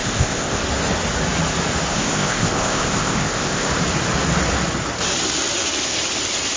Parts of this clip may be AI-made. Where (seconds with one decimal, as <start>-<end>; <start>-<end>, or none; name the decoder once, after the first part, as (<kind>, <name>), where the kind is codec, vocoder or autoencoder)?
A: 0.0-0.6 (codec, ZipCodec); 1.9-3.7